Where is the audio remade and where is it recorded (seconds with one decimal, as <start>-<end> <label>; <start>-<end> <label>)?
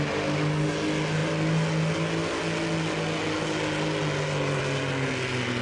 0.0-5.6 recorded